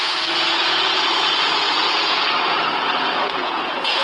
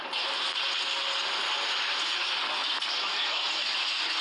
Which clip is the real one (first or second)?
second